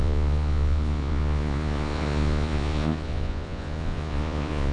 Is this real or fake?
fake